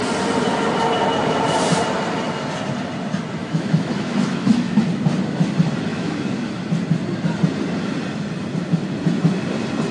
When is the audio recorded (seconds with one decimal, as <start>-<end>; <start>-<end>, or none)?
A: 0.0-3.4; 4.8-5.9; 6.6-9.9